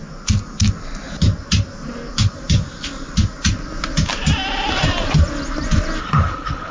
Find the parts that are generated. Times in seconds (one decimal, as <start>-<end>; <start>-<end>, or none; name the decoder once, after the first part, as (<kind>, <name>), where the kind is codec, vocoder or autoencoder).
6.0-6.7 (codec, HILCodec)

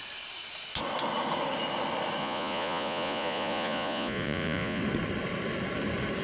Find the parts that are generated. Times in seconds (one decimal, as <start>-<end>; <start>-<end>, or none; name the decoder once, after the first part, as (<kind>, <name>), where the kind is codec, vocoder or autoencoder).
2.2-4.8 (vocoder, Vocos)